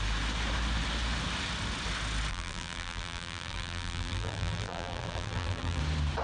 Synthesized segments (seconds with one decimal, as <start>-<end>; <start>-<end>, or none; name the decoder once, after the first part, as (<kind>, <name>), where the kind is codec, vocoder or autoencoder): 2.3-5.8 (vocoder, BigVGAN v2)